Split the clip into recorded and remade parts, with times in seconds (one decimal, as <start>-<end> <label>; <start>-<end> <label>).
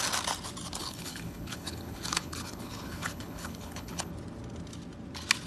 0.0-0.8 recorded; 0.8-4.1 remade; 4.1-5.5 recorded